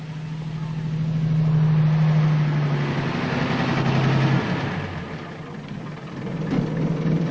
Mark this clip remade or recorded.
recorded